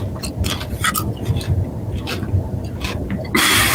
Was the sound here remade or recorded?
recorded